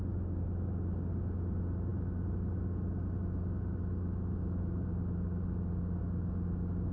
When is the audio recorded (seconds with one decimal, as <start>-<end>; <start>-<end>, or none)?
0.0-6.9